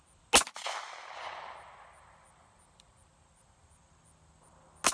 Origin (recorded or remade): recorded